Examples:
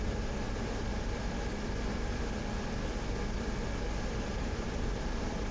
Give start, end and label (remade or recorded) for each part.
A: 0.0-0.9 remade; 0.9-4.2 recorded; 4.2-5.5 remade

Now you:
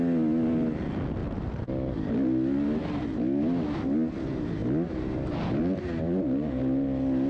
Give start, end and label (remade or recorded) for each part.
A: 0.0-1.2 recorded; 1.2-1.7 remade; 1.7-7.3 recorded

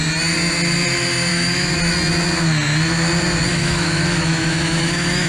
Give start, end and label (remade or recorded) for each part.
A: 0.0-1.3 recorded; 1.3-1.8 remade; 1.8-3.5 recorded; 3.5-5.3 remade

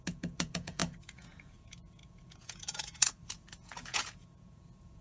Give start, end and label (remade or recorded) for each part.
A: 0.0-5.0 remade

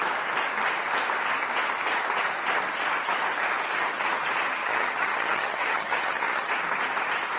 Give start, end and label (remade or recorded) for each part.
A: 0.0-4.6 recorded; 4.6-6.5 remade; 6.5-7.4 recorded

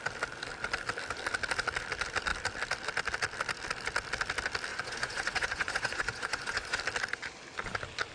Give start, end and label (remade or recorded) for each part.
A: 0.0-4.7 recorded; 4.7-6.8 remade; 6.8-8.1 recorded